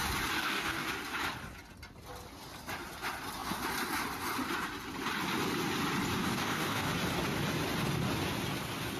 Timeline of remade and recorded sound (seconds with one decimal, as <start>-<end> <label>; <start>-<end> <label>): 0.0-0.4 recorded; 0.4-0.9 remade; 0.9-6.2 recorded; 6.2-6.9 remade; 6.9-9.0 recorded